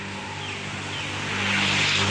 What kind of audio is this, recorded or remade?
recorded